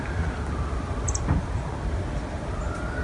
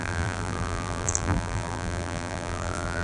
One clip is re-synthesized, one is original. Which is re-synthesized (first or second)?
second